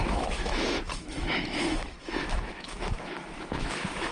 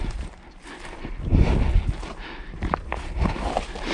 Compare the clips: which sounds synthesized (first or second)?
first